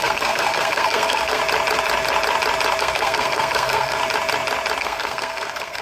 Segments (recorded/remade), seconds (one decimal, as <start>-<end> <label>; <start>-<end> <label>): 0.0-1.4 remade; 1.4-2.8 recorded; 2.8-4.0 remade; 4.0-4.8 recorded; 4.8-5.8 remade

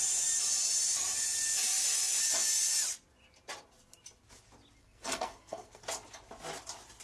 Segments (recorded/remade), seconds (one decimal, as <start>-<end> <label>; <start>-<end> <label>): 0.0-4.8 recorded; 4.8-5.8 remade; 5.8-7.0 recorded

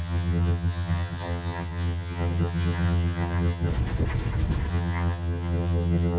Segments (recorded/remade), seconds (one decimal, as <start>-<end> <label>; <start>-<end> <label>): 0.0-3.7 remade; 3.7-4.7 recorded; 4.7-6.2 remade

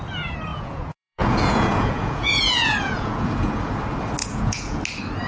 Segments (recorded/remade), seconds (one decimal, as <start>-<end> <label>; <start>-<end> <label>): 0.0-0.5 recorded; 0.5-3.7 remade; 3.7-4.2 recorded; 4.2-4.8 remade; 4.8-5.3 recorded